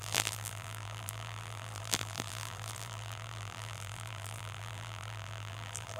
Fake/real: fake